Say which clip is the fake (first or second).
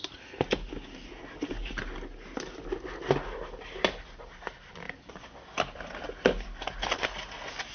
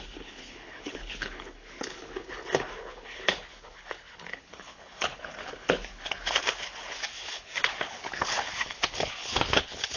second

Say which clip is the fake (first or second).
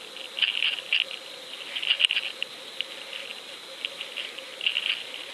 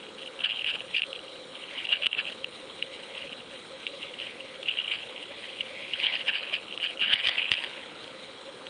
second